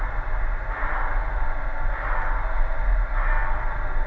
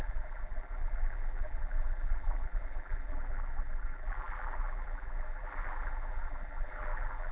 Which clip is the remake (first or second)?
second